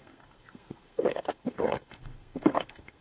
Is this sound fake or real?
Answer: fake